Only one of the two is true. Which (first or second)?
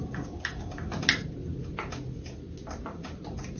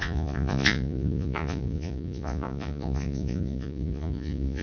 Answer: first